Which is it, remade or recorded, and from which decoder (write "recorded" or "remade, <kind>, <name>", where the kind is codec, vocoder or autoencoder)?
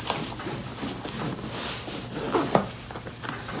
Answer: recorded